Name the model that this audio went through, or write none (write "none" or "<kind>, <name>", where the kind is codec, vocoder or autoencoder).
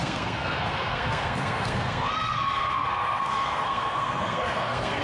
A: codec, SNAC